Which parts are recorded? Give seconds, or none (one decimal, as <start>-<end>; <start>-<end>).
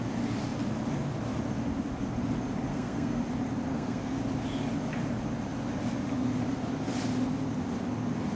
0.0-2.7; 3.2-3.7; 4.2-8.4